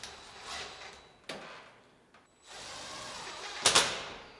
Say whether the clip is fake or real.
real